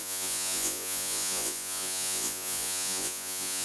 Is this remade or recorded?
remade